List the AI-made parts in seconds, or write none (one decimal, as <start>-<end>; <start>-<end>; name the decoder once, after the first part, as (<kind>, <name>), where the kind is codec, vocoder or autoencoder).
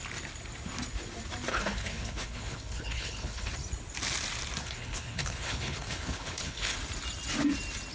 1.5-3.5 (codec, HILCodec); 4.6-6.8